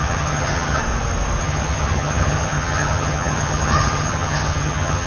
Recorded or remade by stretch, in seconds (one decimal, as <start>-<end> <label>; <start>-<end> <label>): 0.0-0.8 remade; 0.8-1.4 recorded; 1.4-5.1 remade